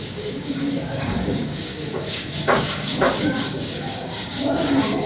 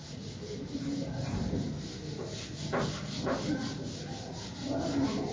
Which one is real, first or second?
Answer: second